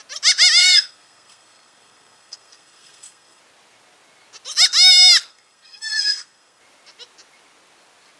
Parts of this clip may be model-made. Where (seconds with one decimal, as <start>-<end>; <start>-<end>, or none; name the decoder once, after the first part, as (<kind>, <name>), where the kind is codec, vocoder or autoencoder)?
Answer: 0.6-3.4 (codec, SNAC); 5.3-6.6